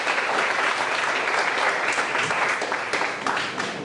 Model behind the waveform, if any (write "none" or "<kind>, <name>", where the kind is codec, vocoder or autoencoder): vocoder, BigVGAN v2